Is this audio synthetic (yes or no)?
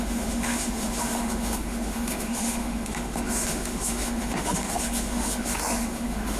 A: yes